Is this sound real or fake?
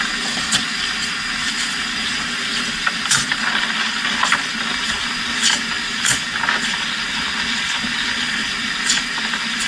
real